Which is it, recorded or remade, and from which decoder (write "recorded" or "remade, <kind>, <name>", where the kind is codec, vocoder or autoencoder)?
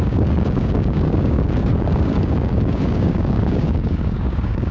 remade, codec, DAC